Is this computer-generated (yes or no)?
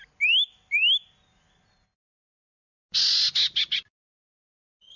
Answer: no